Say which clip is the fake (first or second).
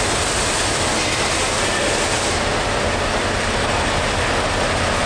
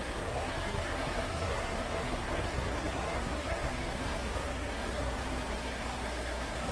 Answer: second